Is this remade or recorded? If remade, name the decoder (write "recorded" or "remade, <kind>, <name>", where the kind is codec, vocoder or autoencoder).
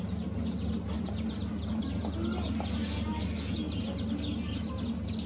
recorded